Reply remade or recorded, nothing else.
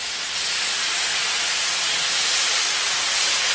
remade